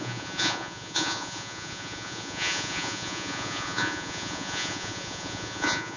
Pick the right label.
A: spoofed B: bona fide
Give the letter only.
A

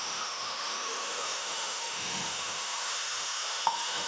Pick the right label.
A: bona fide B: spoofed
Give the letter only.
B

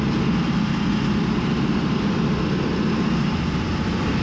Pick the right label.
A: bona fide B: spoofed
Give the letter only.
A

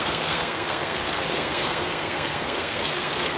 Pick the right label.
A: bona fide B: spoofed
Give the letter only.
B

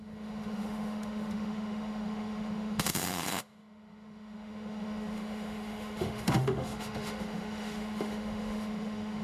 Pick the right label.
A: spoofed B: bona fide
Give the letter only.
A